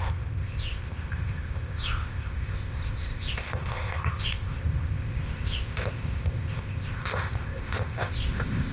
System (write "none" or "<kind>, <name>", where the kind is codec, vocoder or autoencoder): codec, ZipCodec